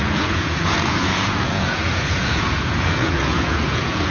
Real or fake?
fake